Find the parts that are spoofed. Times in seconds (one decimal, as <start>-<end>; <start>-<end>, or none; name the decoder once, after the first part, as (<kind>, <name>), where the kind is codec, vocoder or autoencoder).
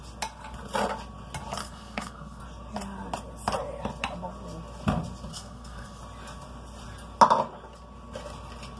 1.6-2.4 (codec, SNAC); 5.3-6.0